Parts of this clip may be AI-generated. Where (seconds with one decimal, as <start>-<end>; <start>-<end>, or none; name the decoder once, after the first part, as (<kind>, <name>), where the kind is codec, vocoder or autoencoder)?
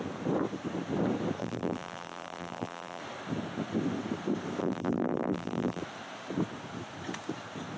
1.4-3.0 (vocoder, BigVGAN v2); 4.6-5.8